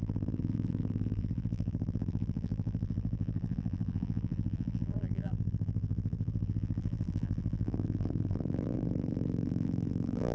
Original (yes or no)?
no